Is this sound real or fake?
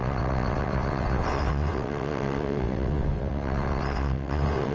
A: fake